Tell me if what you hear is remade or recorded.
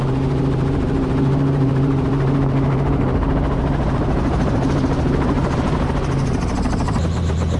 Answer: remade